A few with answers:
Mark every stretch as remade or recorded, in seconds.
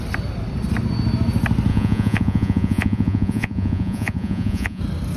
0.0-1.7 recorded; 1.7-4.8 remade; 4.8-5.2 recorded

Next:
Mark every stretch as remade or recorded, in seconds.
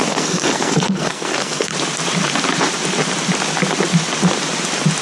0.0-1.7 remade; 1.7-5.0 recorded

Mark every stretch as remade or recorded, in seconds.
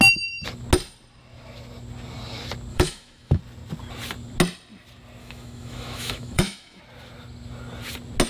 0.0-2.7 recorded; 2.7-3.4 remade; 3.4-5.2 recorded; 5.2-6.8 remade; 6.8-8.3 recorded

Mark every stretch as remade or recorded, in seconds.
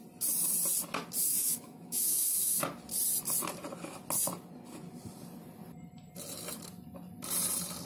0.0-1.2 recorded; 1.2-2.6 remade; 2.6-7.9 recorded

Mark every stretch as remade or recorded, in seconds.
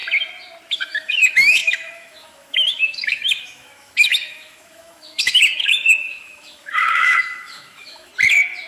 0.0-0.7 recorded; 0.7-8.1 remade; 8.1-8.7 recorded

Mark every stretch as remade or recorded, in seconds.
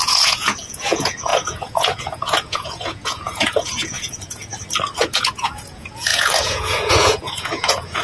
0.0-4.5 remade; 4.5-5.0 recorded; 5.0-8.0 remade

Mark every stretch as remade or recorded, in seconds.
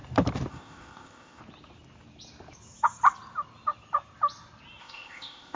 0.0-0.5 recorded; 0.5-1.4 remade; 1.4-4.8 recorded; 4.8-5.6 remade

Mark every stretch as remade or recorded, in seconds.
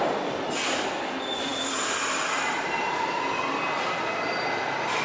0.0-5.0 recorded